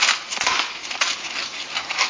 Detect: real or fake real